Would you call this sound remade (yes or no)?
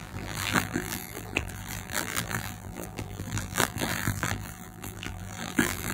yes